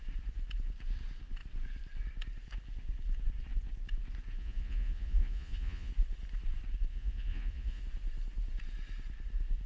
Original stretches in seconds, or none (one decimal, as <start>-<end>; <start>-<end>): 0.0-4.4; 5.9-6.9; 7.8-9.7